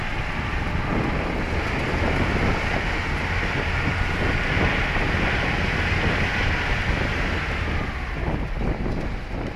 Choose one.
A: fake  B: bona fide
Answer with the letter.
B